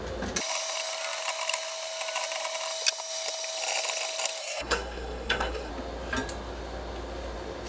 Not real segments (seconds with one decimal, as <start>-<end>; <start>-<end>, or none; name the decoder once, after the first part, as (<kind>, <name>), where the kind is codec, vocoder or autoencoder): 4.4-5.7 (codec, SNAC)